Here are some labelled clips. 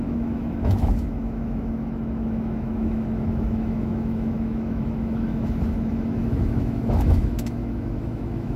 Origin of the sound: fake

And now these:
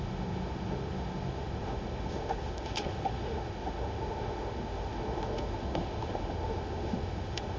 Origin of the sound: fake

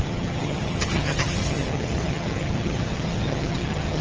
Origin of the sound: fake